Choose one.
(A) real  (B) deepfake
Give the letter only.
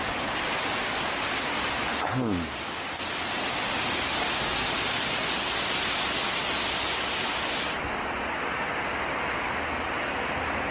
A